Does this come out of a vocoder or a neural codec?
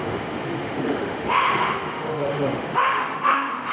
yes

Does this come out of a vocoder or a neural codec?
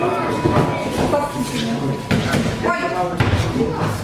no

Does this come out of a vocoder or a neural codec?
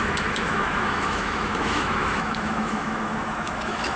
yes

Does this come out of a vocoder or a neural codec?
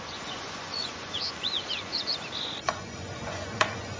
yes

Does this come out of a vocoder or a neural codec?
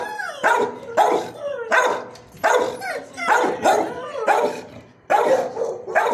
no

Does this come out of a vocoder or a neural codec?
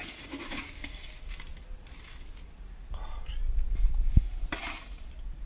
no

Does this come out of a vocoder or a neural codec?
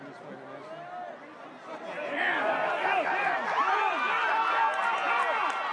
no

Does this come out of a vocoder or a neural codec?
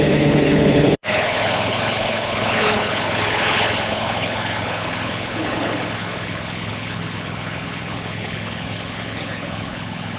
yes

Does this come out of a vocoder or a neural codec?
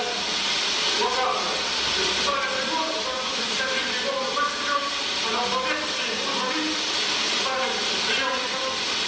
no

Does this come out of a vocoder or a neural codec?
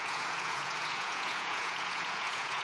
yes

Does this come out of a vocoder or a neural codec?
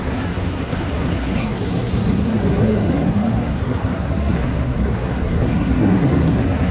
yes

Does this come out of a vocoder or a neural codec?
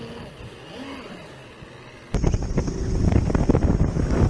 no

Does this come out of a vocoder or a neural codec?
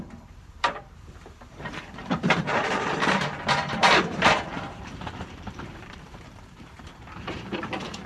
yes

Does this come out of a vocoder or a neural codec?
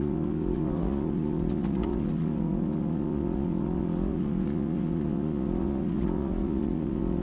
yes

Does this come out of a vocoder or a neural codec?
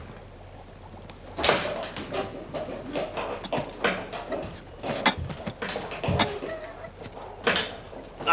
no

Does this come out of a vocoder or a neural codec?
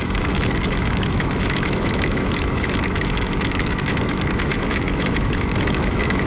yes